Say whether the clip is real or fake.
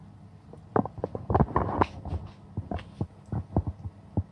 real